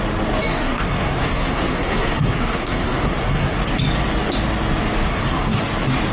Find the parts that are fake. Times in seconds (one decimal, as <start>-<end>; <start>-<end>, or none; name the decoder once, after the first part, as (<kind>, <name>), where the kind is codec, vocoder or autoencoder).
0.5-3.6 (codec, SNAC); 5.1-5.6